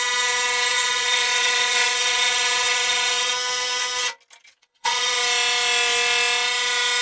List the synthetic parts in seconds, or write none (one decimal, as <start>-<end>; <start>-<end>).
0.7-3.3; 4.6-5.2